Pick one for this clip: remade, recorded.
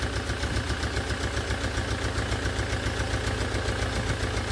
recorded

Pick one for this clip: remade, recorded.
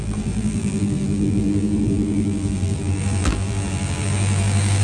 remade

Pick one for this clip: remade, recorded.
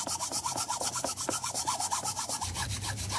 remade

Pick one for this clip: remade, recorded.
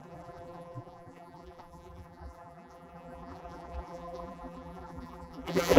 remade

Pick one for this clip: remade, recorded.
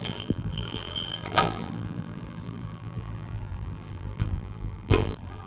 remade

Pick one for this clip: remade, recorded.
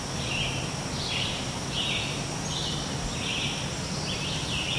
recorded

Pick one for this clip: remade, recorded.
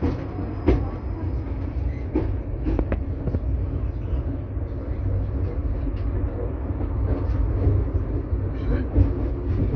recorded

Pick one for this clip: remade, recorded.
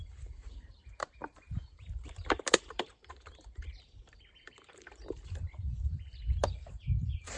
remade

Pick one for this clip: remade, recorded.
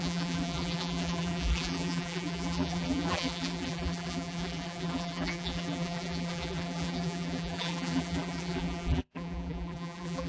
remade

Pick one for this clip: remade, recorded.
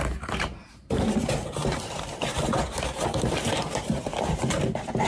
remade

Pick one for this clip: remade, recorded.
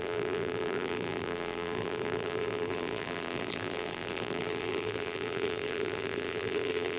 remade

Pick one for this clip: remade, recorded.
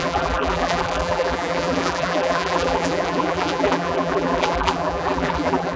remade